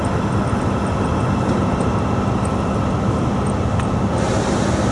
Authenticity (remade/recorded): recorded